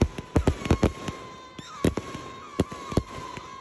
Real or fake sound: real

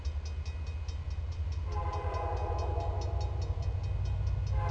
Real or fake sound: real